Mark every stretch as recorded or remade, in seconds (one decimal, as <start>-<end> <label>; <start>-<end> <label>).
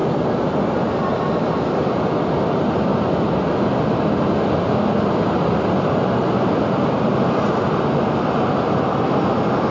0.0-9.7 recorded